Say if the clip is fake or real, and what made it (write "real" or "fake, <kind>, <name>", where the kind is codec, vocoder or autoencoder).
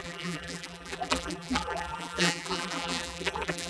fake, vocoder, BigVGAN v2